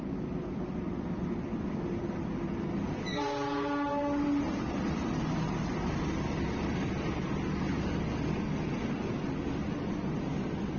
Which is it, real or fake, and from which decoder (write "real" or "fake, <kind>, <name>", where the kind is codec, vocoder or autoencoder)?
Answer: real